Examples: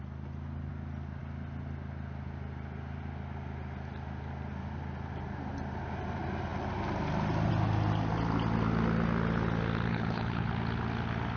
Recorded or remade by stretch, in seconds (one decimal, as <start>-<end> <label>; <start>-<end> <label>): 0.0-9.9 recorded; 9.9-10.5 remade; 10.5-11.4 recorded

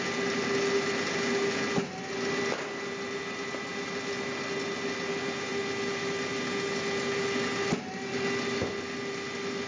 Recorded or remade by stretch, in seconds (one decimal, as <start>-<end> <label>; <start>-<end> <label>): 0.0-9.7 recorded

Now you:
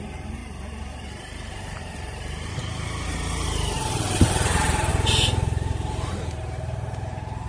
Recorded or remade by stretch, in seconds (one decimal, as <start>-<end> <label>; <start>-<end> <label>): 0.0-7.5 remade